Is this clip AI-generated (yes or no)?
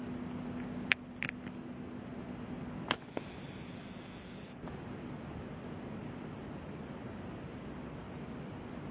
no